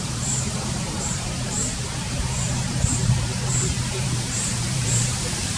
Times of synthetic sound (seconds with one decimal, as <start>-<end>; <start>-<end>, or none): 0.0-5.6